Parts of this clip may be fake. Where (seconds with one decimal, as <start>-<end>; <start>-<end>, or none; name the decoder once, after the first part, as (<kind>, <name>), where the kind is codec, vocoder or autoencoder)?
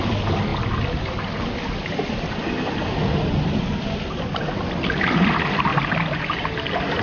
none